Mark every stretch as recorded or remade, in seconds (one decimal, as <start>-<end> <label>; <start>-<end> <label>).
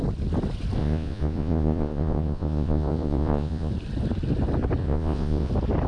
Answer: 0.0-0.8 recorded; 0.8-3.7 remade; 3.7-4.8 recorded; 4.8-5.5 remade; 5.5-5.9 recorded